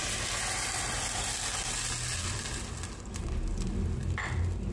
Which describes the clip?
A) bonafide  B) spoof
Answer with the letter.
A